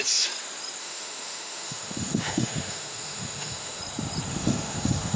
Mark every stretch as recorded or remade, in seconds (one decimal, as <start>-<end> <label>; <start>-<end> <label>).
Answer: 0.0-0.8 recorded; 0.8-3.8 remade; 3.8-4.3 recorded; 4.3-5.2 remade